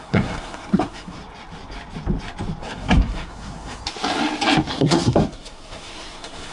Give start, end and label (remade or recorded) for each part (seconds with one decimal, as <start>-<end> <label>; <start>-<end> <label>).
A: 0.0-1.2 remade; 1.2-2.6 recorded; 2.6-3.8 remade; 3.8-4.7 recorded; 4.7-6.5 remade